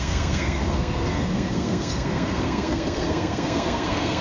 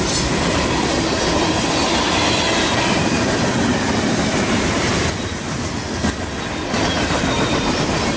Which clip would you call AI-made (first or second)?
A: first